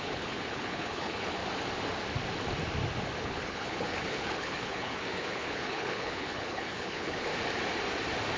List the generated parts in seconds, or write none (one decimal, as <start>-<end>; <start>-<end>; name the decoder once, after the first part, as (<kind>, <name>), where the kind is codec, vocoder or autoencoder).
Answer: 0.0-1.4 (codec, HILCodec); 3.2-7.3